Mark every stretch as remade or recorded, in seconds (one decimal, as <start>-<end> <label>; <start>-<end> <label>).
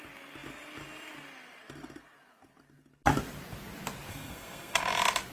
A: 0.0-4.1 recorded; 4.1-4.8 remade; 4.8-5.3 recorded